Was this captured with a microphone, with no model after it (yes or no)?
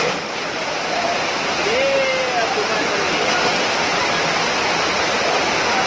yes